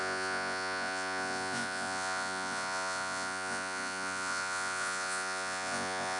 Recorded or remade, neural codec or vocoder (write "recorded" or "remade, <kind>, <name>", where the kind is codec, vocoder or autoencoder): remade, vocoder, Vocos